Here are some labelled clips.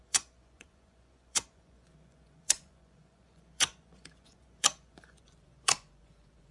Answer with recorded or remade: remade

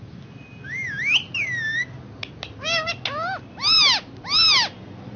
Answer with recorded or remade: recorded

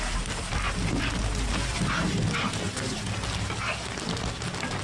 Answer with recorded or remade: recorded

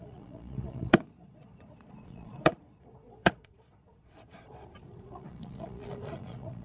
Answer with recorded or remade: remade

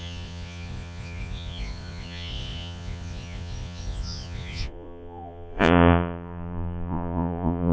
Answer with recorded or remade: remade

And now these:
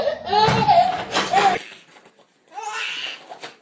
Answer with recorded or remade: recorded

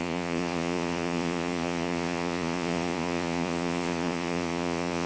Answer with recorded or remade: remade